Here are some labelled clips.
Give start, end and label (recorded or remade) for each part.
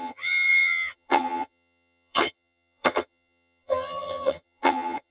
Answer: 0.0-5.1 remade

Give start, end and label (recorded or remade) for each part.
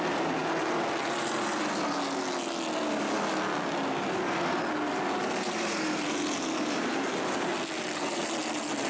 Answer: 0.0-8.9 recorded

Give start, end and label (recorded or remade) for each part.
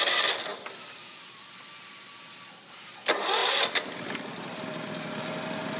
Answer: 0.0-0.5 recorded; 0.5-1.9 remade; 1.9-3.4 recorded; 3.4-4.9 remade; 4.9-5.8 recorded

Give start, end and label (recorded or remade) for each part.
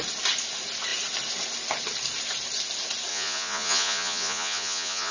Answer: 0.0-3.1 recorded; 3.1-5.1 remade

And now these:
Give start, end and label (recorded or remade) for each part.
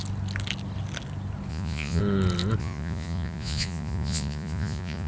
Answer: 0.0-1.5 recorded; 1.5-2.0 remade; 2.0-2.6 recorded; 2.6-5.1 remade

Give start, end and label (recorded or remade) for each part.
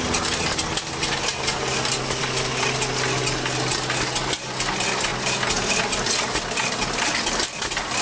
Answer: 0.0-8.0 recorded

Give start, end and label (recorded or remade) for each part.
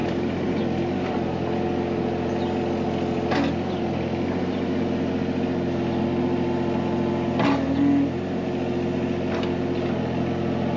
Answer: 0.0-0.6 remade; 0.6-10.8 recorded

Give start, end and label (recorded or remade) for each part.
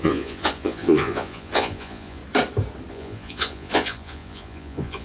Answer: 0.0-2.2 remade; 2.2-2.9 recorded; 2.9-5.0 remade